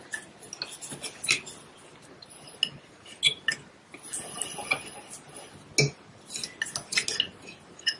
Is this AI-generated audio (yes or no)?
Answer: no